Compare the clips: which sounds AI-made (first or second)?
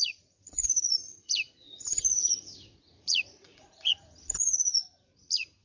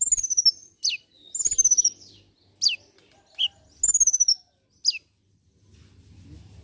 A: first